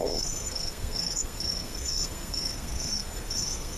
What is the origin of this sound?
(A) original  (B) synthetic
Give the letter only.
B